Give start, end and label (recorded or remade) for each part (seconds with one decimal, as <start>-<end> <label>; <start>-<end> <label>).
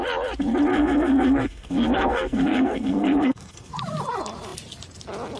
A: 0.0-0.7 recorded; 0.7-3.7 remade; 3.7-5.4 recorded